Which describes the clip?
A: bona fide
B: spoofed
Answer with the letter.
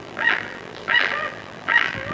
B